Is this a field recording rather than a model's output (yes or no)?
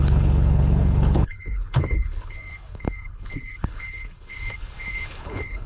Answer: no